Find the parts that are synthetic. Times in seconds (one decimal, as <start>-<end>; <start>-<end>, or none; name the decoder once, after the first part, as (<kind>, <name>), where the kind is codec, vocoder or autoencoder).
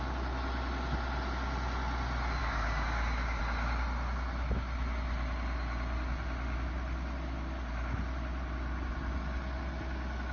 2.4-3.4 (codec, DAC)